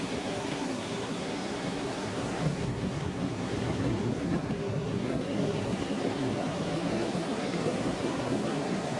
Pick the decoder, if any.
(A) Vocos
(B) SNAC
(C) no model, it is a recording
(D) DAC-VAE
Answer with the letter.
B